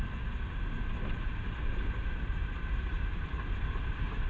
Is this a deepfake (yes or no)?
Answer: no